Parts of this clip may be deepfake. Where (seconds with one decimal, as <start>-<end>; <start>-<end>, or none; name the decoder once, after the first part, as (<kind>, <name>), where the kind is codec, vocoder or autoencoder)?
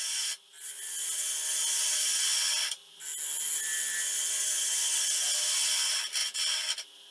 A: none